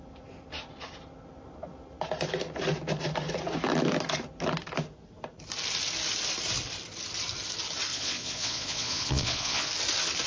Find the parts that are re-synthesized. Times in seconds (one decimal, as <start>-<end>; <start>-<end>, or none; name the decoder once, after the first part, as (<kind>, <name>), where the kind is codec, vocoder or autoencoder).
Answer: 7.9-9.7 (vocoder, Vocos)